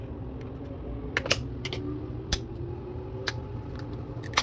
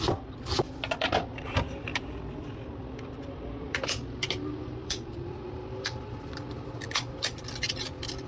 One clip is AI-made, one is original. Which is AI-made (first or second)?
second